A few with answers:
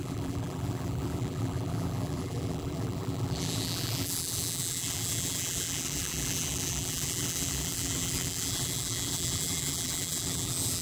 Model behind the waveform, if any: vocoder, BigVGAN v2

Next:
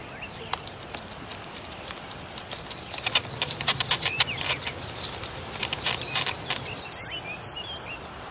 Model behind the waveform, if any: vocoder, BigVGAN v2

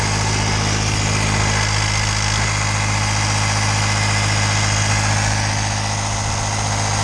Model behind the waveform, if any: none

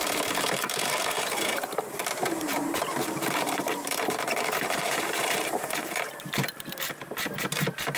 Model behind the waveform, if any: vocoder, BigVGAN v2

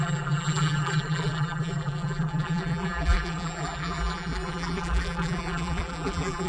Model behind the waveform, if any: vocoder, BigVGAN v2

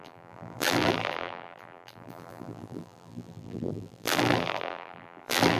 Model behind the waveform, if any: vocoder, BigVGAN v2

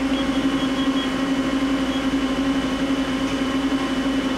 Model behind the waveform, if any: none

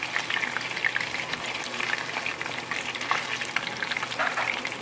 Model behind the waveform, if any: none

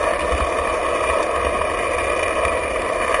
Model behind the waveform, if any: none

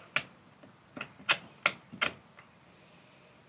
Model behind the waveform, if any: none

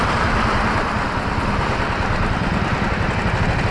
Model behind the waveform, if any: none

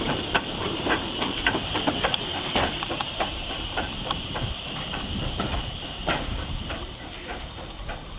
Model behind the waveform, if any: vocoder, BigVGAN v2